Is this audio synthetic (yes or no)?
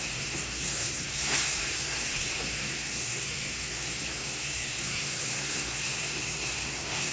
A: yes